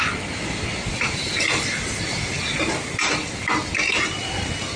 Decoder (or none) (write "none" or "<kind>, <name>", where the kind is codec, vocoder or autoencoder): none